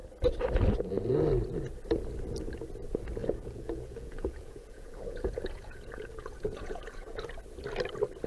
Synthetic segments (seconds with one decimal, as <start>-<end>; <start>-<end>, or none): 3.2-7.4